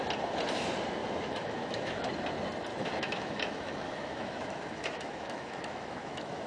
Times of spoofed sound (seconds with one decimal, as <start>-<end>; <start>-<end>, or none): 1.0-2.1; 2.7-6.5